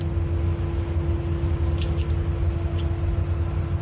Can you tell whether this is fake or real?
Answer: real